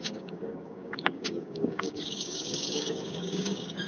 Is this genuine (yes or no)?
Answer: no